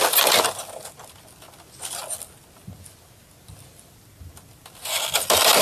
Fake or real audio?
real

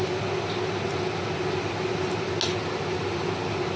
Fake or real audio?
real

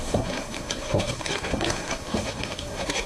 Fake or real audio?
fake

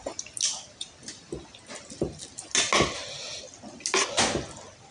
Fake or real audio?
real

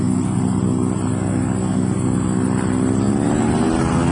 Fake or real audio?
real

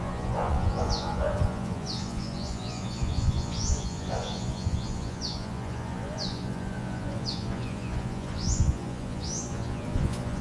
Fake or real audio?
fake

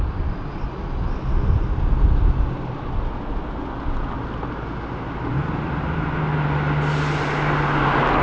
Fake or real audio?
real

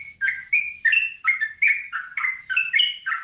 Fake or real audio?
real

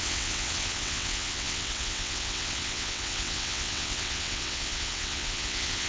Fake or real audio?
fake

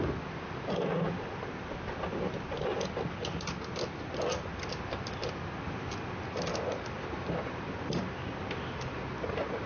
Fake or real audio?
real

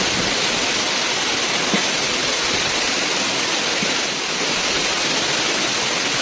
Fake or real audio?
real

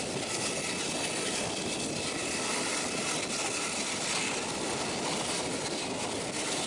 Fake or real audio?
real